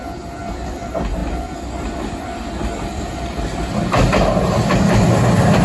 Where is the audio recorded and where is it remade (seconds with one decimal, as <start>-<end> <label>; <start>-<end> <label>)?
0.0-5.6 recorded